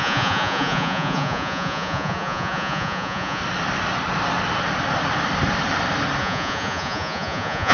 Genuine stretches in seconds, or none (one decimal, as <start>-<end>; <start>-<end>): 3.4-6.2